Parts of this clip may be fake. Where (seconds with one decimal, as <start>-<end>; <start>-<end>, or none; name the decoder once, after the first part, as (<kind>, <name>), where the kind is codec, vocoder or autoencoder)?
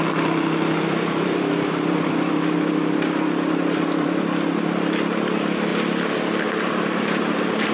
0.0-5.7 (vocoder, BigVGAN v2); 6.7-7.7